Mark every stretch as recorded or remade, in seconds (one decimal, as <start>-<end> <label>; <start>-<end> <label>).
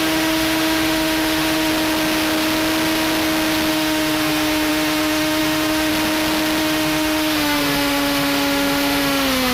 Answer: 0.0-1.7 remade; 1.7-3.7 recorded; 3.7-5.9 remade; 5.9-6.6 recorded; 6.6-9.5 remade